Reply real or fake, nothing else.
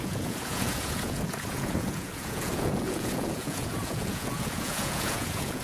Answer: fake